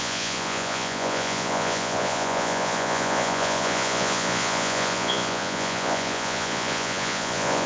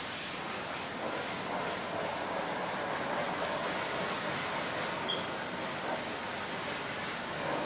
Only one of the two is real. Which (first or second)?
second